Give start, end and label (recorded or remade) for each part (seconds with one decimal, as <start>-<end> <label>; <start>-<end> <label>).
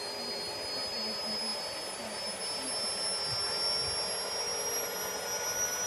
0.0-5.9 recorded